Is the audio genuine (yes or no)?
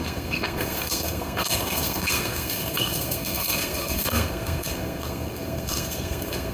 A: no